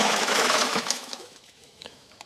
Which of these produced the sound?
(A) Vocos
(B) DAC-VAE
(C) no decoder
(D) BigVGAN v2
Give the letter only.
B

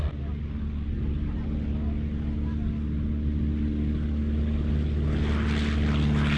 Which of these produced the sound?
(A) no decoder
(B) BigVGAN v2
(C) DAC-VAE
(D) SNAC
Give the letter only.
A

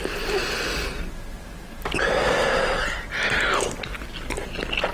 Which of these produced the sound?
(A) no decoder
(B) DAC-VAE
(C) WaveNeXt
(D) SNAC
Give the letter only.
A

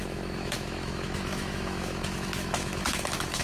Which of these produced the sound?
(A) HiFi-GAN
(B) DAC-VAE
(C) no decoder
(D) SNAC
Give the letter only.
B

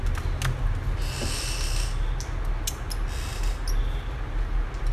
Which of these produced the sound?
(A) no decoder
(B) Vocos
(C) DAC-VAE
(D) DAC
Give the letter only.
A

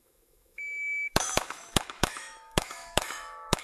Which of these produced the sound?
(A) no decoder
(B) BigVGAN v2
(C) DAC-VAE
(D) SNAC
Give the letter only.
C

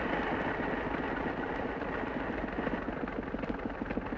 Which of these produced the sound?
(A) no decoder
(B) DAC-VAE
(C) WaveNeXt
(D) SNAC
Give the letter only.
A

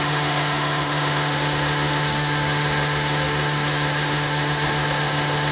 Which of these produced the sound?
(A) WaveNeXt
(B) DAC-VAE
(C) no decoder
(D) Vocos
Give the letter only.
B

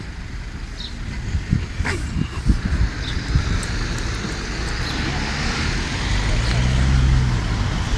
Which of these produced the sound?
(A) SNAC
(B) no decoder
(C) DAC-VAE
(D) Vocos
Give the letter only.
B